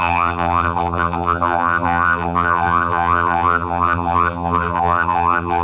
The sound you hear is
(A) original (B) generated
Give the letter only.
B